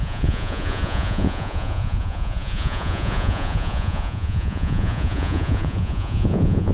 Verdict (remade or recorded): remade